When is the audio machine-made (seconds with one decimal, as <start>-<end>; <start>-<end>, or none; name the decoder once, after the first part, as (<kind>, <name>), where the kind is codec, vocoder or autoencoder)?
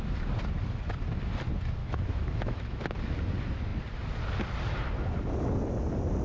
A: 1.8-2.8 (autoencoder, DAC-VAE)